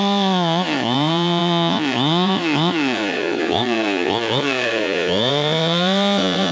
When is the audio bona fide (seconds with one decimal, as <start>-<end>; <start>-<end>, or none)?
none